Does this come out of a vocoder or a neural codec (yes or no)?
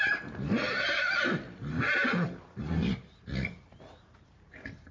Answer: no